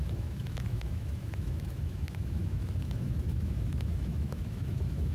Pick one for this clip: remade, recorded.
remade